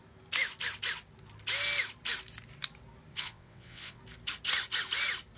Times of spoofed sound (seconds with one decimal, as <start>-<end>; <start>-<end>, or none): 3.1-4.0